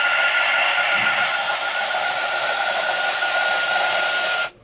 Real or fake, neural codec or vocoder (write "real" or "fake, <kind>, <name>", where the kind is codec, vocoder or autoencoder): real